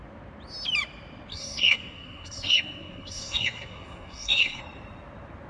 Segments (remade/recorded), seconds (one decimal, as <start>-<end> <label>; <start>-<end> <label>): 0.0-1.3 recorded; 1.3-4.6 remade; 4.6-5.5 recorded